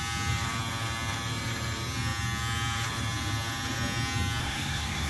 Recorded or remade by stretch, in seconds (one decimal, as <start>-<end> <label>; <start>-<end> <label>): 0.0-4.4 recorded; 4.4-5.1 remade